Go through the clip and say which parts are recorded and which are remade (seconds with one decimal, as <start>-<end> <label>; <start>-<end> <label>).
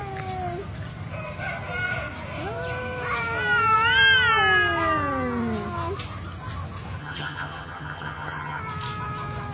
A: 0.0-7.0 recorded; 7.0-8.6 remade; 8.6-9.5 recorded